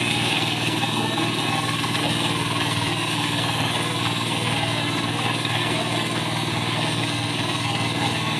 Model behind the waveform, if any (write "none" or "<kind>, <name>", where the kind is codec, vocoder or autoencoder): codec, SNAC